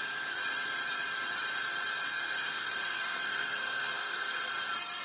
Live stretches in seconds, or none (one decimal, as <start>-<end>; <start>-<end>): 0.0-2.1; 4.5-5.0